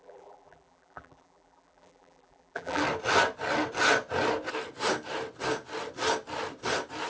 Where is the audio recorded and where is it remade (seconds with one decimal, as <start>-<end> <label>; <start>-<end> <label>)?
0.0-2.8 remade; 2.8-7.1 recorded